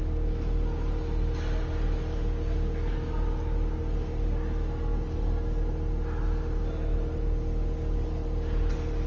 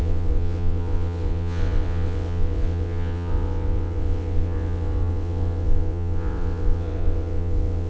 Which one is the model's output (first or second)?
second